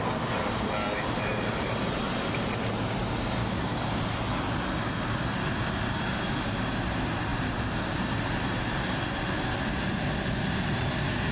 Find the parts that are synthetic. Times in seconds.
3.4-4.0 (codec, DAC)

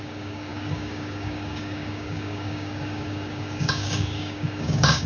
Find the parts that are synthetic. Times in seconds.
0.0-5.1 (codec, DAC)

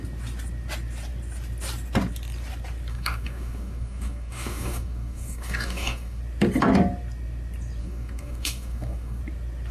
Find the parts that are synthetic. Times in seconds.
2.9-6.2 (codec, DAC); 7.8-9.2

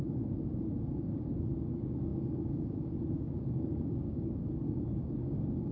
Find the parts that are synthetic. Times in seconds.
0.0-5.7 (codec, DAC)

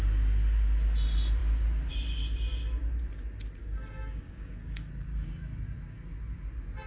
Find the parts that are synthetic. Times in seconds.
3.6-4.9 (codec, DAC)

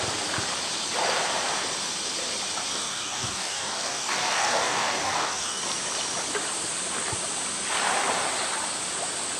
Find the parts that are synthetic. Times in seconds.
2.7-5.6 (codec, DAC)

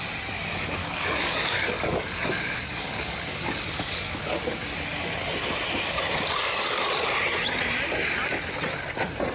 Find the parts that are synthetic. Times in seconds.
0.8-4.4 (codec, DAC)

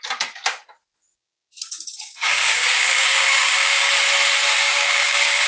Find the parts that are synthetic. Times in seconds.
1.1-3.9 (codec, DAC); 4.6-5.5